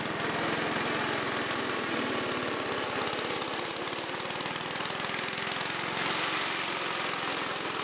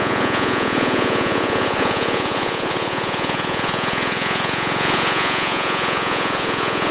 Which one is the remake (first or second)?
second